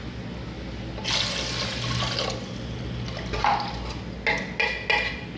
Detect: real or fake real